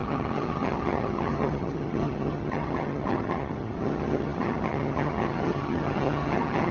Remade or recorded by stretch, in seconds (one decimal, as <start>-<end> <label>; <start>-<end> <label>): 0.0-6.7 remade